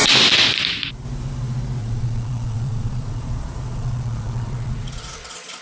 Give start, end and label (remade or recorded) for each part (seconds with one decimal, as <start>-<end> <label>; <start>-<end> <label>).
0.0-1.8 recorded; 1.8-5.6 remade